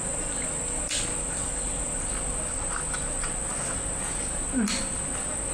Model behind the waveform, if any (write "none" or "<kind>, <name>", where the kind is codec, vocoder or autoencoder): none